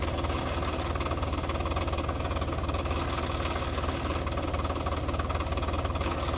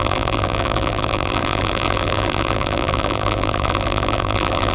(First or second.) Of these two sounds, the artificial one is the second